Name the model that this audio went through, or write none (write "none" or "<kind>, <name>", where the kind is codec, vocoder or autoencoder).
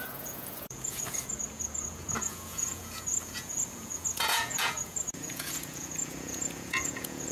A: vocoder, Vocos